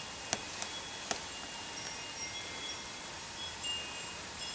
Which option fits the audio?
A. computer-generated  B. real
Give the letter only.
B